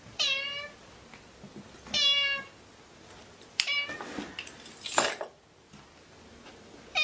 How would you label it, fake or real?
real